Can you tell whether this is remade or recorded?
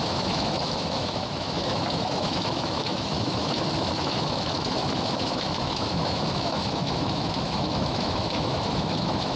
remade